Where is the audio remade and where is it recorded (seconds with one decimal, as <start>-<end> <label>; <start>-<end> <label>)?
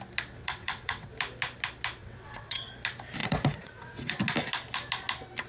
0.0-0.4 recorded; 0.4-1.1 remade; 1.1-2.0 recorded; 2.0-2.7 remade; 2.7-3.2 recorded; 3.2-4.1 remade; 4.1-5.5 recorded